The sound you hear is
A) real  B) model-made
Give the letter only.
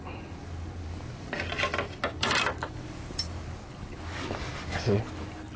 A